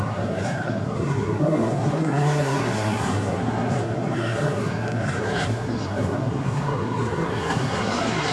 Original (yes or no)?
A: no